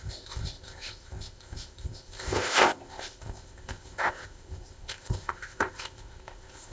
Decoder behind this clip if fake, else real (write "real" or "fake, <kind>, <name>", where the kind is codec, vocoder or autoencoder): fake, codec, ZipCodec